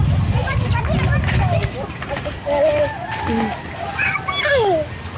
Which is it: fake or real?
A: real